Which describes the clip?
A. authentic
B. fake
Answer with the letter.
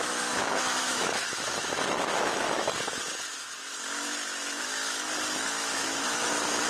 B